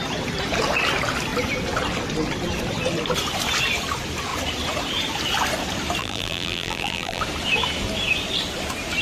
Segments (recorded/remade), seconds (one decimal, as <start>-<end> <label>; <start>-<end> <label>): 0.0-6.0 recorded; 6.0-7.2 remade; 7.2-9.0 recorded